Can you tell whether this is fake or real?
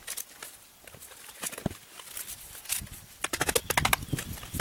real